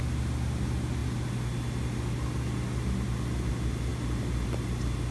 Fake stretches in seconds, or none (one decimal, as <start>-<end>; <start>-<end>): none